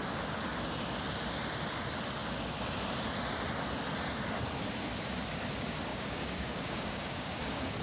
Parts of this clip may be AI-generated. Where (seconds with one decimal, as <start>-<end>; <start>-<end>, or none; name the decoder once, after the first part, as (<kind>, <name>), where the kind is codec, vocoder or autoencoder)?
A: 5.9-7.8 (codec, DAC)